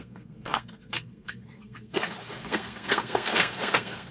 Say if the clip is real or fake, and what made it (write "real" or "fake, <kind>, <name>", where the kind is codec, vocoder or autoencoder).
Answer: fake, codec, SNAC